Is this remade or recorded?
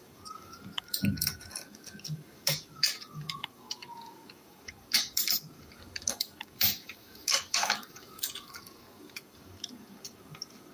remade